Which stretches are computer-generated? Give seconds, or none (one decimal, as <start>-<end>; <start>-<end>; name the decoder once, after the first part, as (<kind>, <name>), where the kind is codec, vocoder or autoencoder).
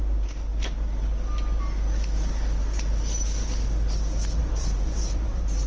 4.4-5.7 (vocoder, BigVGAN v2)